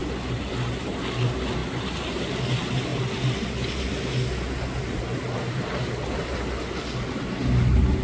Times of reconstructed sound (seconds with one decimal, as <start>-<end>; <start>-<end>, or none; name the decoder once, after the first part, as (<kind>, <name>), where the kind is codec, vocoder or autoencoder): none